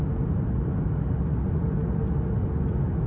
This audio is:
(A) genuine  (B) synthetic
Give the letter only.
A